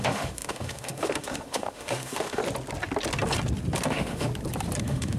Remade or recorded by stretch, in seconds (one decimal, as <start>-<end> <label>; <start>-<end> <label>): 0.0-2.4 remade; 2.4-3.9 recorded; 3.9-4.3 remade; 4.3-4.8 recorded; 4.8-5.2 remade